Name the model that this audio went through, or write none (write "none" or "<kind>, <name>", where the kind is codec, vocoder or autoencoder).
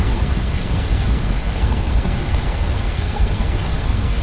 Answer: codec, SNAC